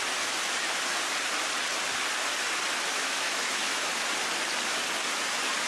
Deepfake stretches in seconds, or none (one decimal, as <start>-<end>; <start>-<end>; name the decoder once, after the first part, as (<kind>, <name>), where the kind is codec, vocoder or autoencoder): 2.9-3.9 (autoencoder, DAC-VAE)